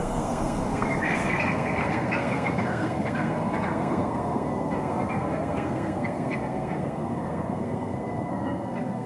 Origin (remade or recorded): remade